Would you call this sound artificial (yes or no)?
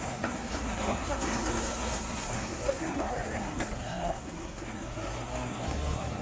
yes